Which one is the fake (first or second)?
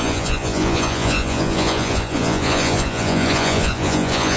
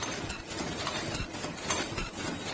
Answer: first